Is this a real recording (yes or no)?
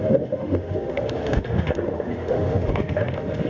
no